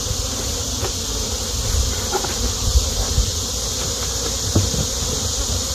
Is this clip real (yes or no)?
no